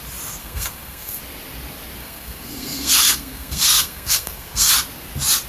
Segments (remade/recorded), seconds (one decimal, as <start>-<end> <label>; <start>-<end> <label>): 0.0-0.4 recorded; 0.4-1.2 remade; 1.2-2.0 recorded; 2.0-4.7 remade; 4.7-5.5 recorded